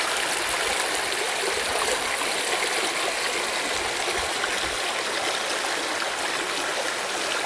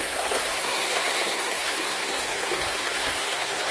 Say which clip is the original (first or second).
first